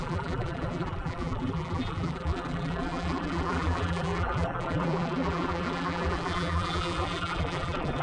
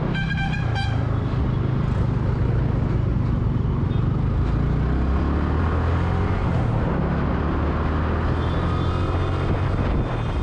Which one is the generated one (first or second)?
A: first